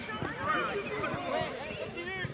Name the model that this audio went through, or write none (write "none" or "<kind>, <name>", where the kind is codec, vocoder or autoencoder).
none